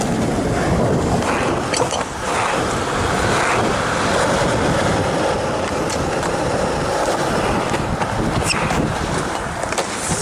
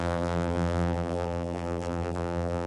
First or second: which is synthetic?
second